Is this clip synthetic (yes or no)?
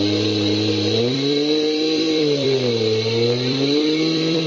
yes